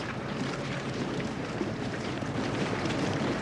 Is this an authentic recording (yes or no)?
no